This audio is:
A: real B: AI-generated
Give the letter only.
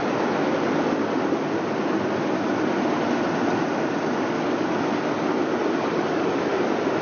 A